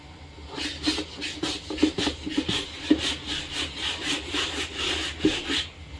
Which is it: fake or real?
real